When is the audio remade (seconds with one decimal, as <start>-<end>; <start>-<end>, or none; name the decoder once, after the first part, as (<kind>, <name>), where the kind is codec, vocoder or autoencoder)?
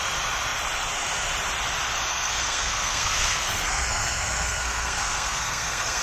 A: 2.1-6.0 (codec, SNAC)